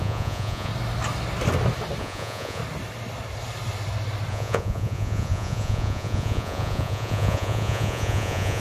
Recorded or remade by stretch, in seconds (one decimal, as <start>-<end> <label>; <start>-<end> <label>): 0.0-0.7 remade; 0.7-2.0 recorded; 2.0-2.6 remade; 2.6-4.3 recorded; 4.3-8.6 remade